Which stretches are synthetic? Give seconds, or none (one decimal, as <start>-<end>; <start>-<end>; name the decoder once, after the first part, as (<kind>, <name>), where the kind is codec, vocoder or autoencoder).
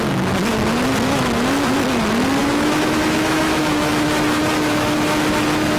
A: 2.4-5.8 (autoencoder, DAC-VAE)